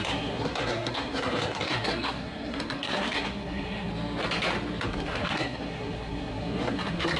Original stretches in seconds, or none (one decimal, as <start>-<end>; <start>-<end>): 3.9-4.8